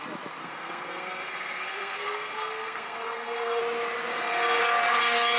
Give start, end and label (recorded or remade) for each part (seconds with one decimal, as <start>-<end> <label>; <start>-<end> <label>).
0.0-0.4 recorded; 0.4-3.6 remade; 3.6-4.1 recorded; 4.1-4.6 remade; 4.6-5.4 recorded